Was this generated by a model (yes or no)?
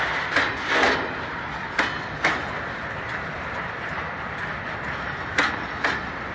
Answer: no